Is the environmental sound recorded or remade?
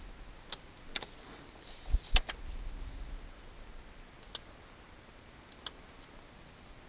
recorded